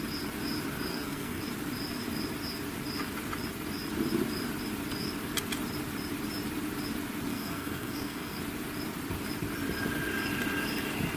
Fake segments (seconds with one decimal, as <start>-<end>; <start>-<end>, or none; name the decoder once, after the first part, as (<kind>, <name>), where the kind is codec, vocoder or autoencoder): 0.9-1.4 (codec, SNAC); 7.3-8.4

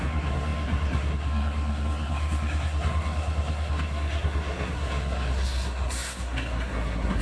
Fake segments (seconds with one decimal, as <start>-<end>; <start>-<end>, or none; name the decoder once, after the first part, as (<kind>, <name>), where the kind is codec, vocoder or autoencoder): 0.0-7.2 (codec, SNAC)

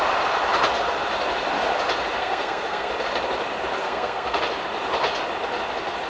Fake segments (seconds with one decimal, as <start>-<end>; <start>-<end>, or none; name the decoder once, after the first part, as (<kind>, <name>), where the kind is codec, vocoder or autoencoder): 2.2-2.9 (codec, SNAC); 3.8-4.4

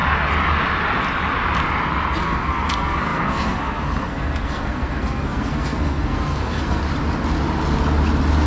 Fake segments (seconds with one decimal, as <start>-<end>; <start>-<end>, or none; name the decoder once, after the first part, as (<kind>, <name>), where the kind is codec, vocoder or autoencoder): 2.2-6.8 (codec, SNAC)

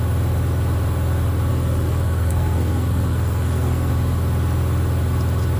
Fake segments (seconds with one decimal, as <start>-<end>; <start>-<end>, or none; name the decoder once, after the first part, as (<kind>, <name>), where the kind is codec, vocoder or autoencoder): 1.5-3.9 (codec, SNAC)

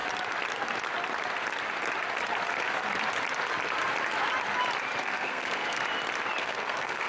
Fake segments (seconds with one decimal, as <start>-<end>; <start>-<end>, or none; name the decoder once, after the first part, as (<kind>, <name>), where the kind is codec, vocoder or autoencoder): 5.0-5.8 (codec, SNAC); 6.4-7.1